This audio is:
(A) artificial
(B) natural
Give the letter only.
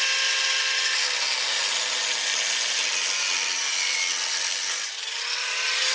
B